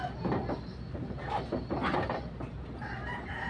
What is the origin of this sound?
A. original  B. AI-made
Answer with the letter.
A